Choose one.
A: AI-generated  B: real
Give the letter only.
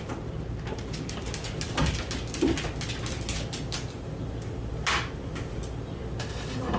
B